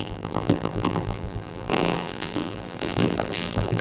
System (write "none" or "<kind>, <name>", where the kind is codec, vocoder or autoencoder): vocoder, BigVGAN v2